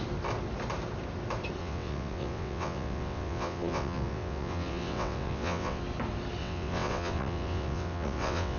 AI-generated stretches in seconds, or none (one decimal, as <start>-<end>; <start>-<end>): 1.6-5.8; 6.4-8.6